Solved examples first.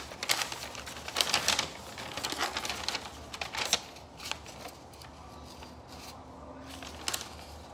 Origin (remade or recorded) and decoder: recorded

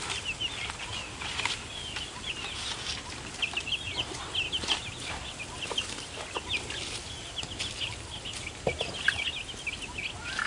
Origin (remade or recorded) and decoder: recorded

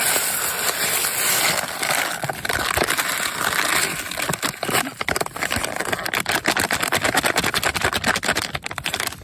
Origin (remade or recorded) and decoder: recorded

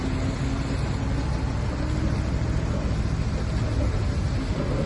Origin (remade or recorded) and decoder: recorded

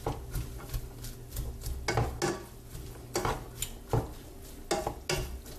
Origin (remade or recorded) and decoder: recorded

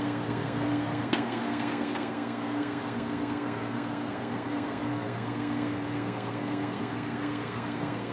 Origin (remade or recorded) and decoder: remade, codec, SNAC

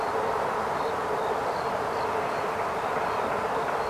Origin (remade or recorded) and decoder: recorded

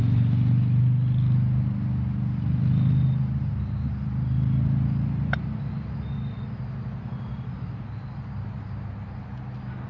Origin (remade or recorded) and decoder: recorded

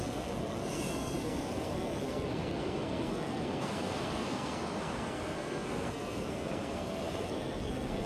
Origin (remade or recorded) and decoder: remade, codec, SNAC